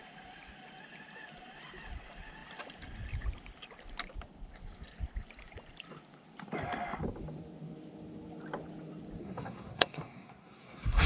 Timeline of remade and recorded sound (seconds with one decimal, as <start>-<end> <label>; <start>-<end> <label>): 0.0-9.2 recorded; 9.2-11.1 remade